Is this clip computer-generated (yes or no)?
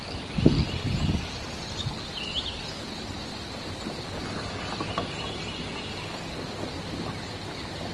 no